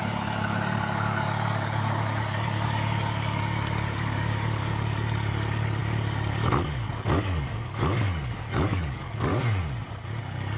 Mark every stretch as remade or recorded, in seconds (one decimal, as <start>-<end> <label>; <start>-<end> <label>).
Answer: 0.0-9.3 remade; 9.3-10.2 recorded; 10.2-10.6 remade

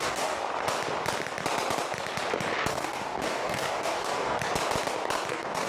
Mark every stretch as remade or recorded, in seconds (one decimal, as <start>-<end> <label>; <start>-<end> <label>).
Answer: 0.0-0.4 remade; 0.4-2.7 recorded; 2.7-4.4 remade; 4.4-5.3 recorded; 5.3-5.7 remade

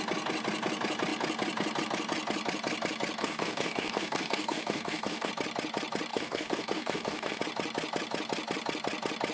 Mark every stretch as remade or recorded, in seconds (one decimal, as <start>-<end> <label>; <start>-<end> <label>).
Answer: 0.0-3.2 recorded; 3.2-5.3 remade; 5.3-6.1 recorded; 6.1-7.4 remade; 7.4-9.3 recorded

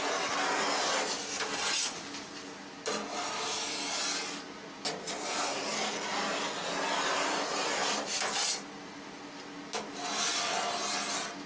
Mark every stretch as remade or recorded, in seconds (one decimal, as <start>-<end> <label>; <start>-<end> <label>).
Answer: 0.0-11.5 recorded

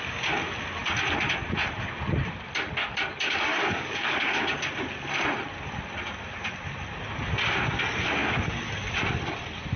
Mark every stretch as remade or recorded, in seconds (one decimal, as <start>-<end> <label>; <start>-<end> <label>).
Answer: 0.0-2.8 recorded; 2.8-4.6 remade; 4.6-9.8 recorded

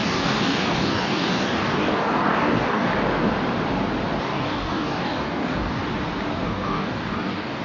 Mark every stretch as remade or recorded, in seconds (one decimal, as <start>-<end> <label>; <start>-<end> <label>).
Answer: 0.0-2.9 remade; 2.9-4.2 recorded; 4.2-5.8 remade; 5.8-6.4 recorded; 6.4-7.6 remade

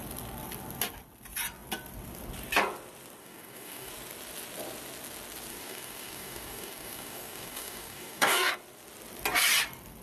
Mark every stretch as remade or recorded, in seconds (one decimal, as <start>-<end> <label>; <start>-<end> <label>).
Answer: 0.0-3.2 recorded; 3.2-3.9 remade; 3.9-5.5 recorded; 5.5-8.5 remade; 8.5-10.0 recorded